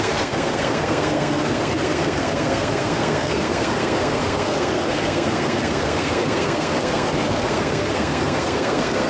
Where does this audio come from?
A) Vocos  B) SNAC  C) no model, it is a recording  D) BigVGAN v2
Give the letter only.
B